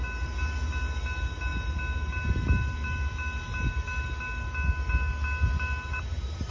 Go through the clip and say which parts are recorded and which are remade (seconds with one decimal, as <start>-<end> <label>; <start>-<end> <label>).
0.0-6.5 recorded